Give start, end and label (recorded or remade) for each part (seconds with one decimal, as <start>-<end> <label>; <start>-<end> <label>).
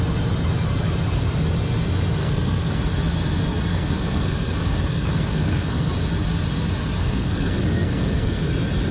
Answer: 0.0-2.2 recorded; 2.2-2.8 remade; 2.8-3.7 recorded; 3.7-5.9 remade; 5.9-7.0 recorded; 7.0-8.5 remade; 8.5-8.9 recorded